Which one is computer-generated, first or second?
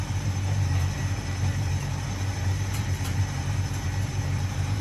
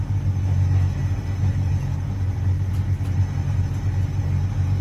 first